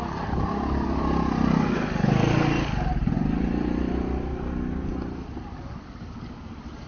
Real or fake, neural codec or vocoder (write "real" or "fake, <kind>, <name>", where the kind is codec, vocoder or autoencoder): real